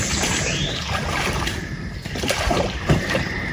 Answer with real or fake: fake